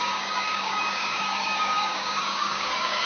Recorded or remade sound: remade